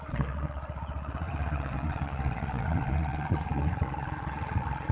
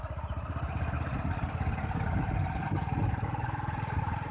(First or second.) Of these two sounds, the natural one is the second